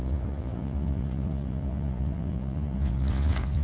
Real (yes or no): no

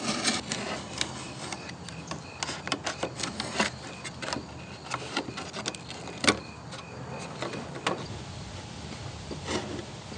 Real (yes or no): yes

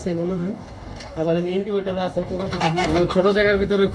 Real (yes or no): no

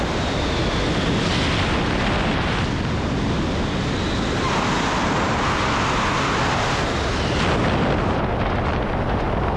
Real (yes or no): yes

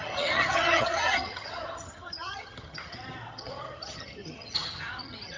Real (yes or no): no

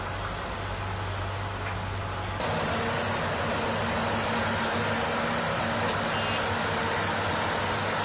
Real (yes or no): yes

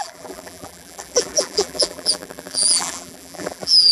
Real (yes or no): no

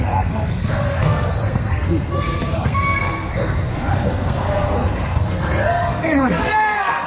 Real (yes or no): no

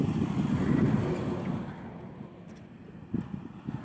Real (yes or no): yes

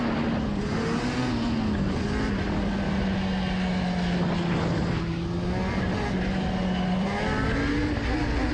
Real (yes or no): yes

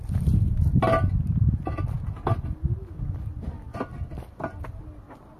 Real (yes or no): yes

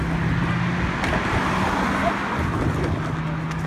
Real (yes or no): yes